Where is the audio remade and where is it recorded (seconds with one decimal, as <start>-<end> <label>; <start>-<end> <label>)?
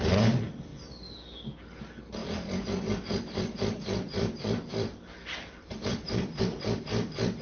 0.0-2.2 recorded; 2.2-6.4 remade; 6.4-7.4 recorded